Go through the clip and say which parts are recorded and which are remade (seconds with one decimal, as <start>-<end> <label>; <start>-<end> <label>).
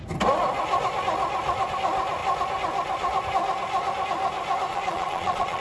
0.0-4.7 recorded; 4.7-5.6 remade